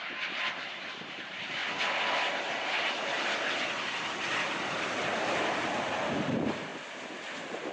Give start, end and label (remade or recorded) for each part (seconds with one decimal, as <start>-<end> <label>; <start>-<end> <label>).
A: 0.0-1.6 remade; 1.6-4.3 recorded; 4.3-6.7 remade; 6.7-7.7 recorded